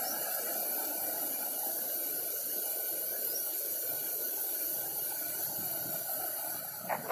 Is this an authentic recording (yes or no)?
yes